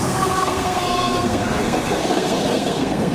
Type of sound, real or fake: fake